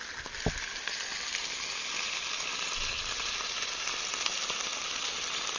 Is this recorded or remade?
recorded